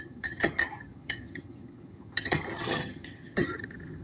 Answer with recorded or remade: remade